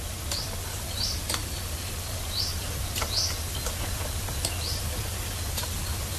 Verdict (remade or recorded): recorded